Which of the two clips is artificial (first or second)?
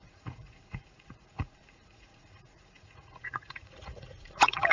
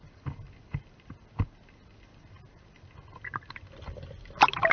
first